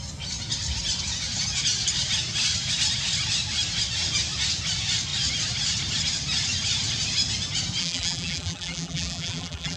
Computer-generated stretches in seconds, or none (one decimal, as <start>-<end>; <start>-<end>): 7.8-9.8